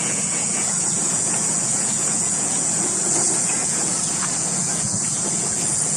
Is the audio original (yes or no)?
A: no